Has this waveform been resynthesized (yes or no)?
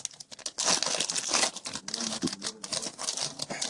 no